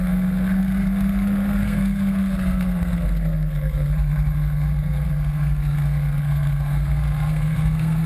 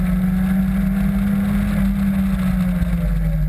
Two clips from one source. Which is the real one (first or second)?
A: second